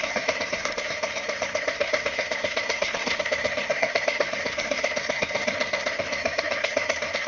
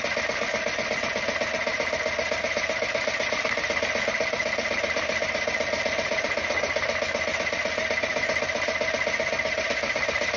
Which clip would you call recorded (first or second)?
second